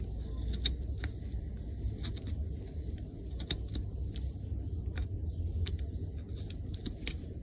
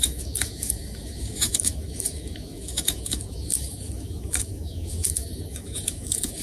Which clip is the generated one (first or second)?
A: second